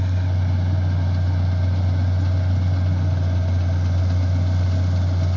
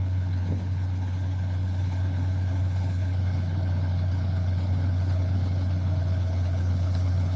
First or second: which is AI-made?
second